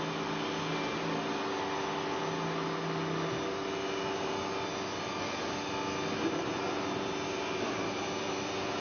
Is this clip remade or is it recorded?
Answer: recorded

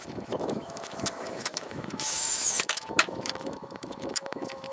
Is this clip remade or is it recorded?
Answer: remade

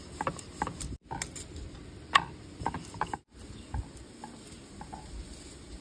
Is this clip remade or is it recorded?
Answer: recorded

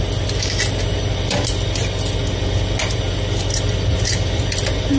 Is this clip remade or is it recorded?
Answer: recorded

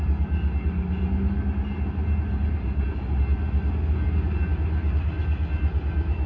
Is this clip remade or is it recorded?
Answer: recorded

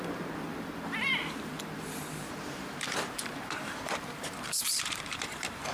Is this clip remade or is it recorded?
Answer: remade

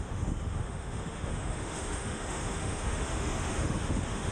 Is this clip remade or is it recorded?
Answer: remade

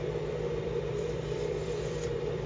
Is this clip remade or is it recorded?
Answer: remade